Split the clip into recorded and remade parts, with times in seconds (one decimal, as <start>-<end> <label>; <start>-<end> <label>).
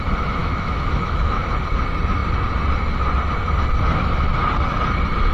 0.0-0.4 recorded; 0.4-1.4 remade; 1.4-5.3 recorded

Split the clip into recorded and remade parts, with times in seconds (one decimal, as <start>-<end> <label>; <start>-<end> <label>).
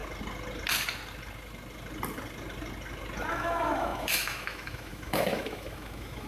0.0-3.3 recorded; 3.3-6.3 remade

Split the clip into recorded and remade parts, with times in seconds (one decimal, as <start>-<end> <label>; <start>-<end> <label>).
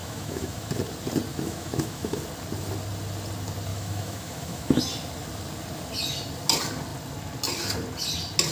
0.0-0.7 remade; 0.7-1.3 recorded; 1.3-2.2 remade; 2.2-3.7 recorded; 3.7-4.8 remade; 4.8-8.5 recorded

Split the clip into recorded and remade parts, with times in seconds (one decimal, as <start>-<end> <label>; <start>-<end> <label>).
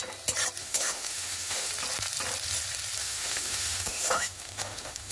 0.0-0.6 recorded; 0.6-1.7 remade; 1.7-3.0 recorded; 3.0-5.1 remade